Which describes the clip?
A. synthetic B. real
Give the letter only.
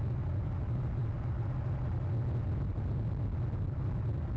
B